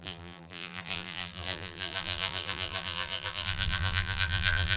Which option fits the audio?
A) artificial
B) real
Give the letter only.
A